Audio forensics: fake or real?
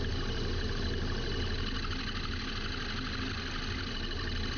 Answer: real